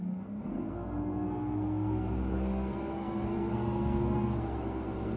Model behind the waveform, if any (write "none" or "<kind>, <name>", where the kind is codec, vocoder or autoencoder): codec, SNAC